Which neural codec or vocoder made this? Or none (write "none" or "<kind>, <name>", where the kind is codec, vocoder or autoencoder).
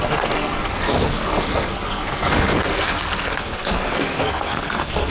codec, SNAC